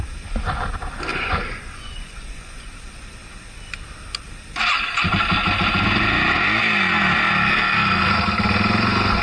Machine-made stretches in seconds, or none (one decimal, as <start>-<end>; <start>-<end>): 1.1-2.7